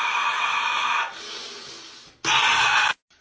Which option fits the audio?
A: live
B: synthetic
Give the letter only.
A